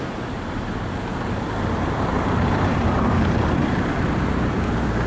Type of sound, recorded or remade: remade